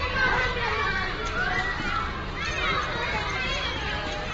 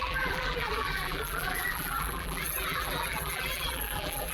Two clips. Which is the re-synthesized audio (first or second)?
second